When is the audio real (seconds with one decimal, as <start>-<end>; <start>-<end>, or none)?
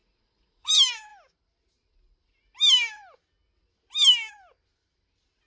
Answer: 0.7-5.5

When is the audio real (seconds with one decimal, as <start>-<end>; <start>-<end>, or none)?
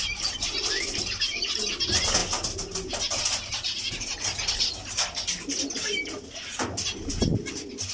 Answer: 0.0-7.9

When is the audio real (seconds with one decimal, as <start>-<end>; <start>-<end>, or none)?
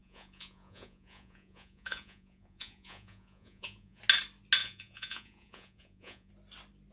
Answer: 4.0-4.6; 6.3-6.9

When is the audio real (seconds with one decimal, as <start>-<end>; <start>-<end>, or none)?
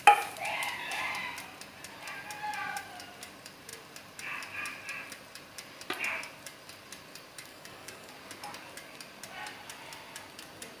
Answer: 0.0-7.5; 8.1-10.8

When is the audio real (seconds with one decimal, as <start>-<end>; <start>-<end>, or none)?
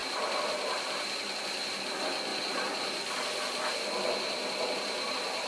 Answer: 1.4-5.5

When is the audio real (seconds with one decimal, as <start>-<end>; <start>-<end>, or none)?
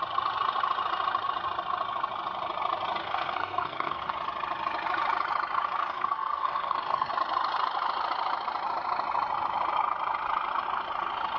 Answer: 0.0-3.0; 4.1-5.8; 7.1-11.4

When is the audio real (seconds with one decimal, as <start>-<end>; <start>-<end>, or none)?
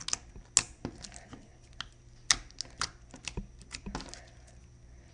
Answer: 0.0-5.1